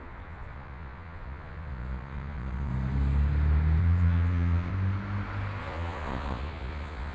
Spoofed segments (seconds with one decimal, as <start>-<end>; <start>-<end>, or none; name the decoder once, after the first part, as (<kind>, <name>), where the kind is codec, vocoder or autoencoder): 0.0-2.7 (vocoder, Vocos); 3.8-4.7; 5.6-7.1